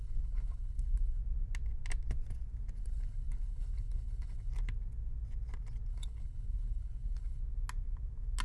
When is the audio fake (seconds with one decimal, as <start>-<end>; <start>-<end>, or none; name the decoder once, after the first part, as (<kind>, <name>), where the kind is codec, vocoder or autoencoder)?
0.0-1.2 (codec, HILCodec); 2.8-4.5; 5.9-7.4

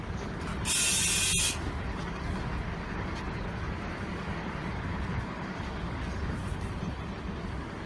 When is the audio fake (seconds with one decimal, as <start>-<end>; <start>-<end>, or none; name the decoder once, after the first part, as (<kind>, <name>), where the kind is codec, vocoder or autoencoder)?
0.0-0.5 (codec, DAC); 1.6-6.4; 7.4-7.9